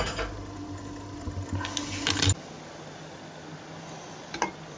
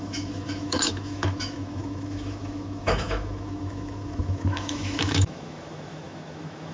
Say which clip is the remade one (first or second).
second